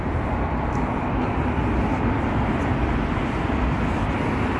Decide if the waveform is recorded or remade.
remade